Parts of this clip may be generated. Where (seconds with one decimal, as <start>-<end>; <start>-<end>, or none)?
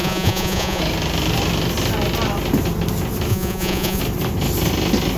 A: 0.0-0.8; 3.3-4.0